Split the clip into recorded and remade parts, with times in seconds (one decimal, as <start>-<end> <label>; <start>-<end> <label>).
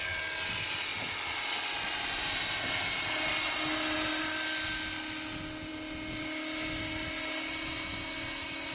0.0-8.7 recorded